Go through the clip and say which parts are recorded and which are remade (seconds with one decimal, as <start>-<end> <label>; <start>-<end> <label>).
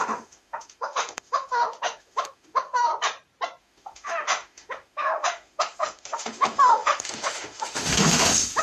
0.0-2.9 remade; 2.9-3.6 recorded; 3.6-8.6 remade